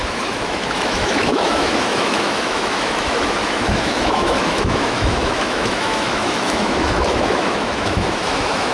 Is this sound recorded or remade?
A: remade